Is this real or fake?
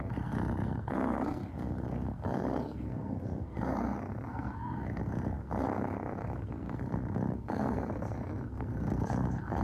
fake